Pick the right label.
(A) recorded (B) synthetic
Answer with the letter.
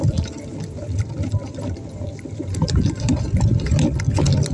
A